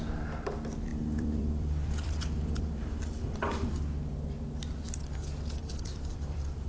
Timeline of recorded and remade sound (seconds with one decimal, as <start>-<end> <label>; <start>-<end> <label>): 0.0-0.9 recorded; 0.9-3.8 remade; 3.8-5.6 recorded; 5.6-6.7 remade

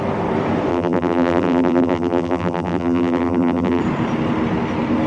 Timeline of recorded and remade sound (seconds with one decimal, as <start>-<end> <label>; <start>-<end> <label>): 0.0-0.7 recorded; 0.7-3.8 remade; 3.8-5.1 recorded